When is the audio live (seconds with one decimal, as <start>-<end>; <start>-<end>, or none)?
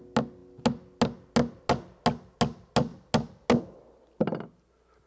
0.0-5.1